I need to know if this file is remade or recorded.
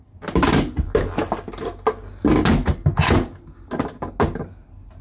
recorded